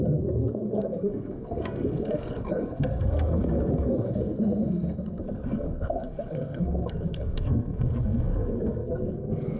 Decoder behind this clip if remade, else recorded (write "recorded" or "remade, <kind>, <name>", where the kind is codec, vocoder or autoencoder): remade, codec, SNAC